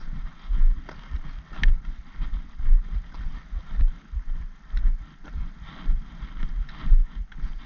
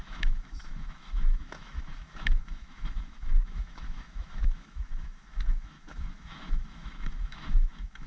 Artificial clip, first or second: second